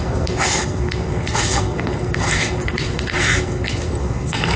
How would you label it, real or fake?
fake